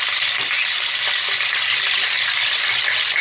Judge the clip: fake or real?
real